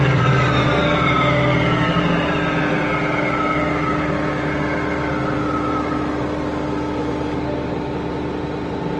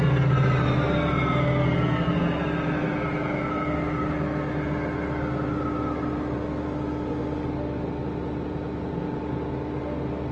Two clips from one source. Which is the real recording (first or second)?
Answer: second